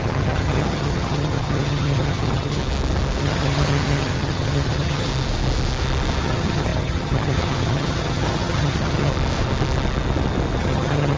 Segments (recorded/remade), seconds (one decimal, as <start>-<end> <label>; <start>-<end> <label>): 0.0-2.6 remade; 2.6-3.2 recorded; 3.2-5.1 remade; 5.1-6.2 recorded; 6.2-9.1 remade; 9.1-10.6 recorded; 10.6-11.2 remade

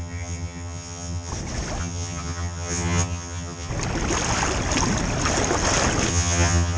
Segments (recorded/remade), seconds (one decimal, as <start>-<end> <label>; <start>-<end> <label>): 0.0-1.3 remade; 1.3-1.8 recorded; 1.8-3.7 remade; 3.7-6.1 recorded; 6.1-6.8 remade